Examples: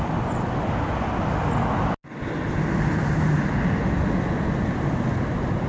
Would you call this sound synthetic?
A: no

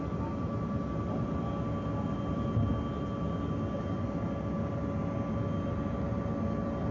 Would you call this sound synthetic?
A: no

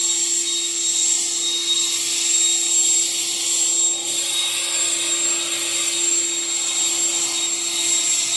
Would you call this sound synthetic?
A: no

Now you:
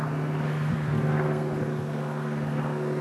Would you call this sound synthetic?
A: yes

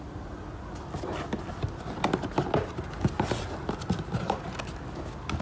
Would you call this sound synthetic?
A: no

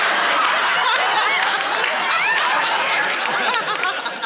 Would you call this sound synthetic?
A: no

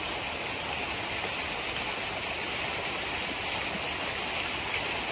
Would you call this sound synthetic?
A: no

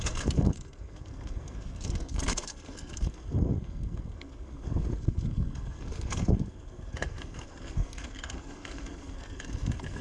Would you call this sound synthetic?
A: yes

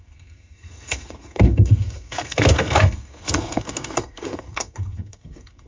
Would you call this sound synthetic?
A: yes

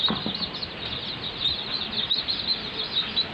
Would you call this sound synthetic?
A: no